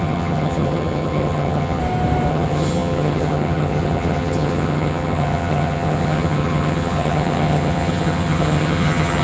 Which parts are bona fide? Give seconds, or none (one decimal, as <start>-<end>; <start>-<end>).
1.8-2.3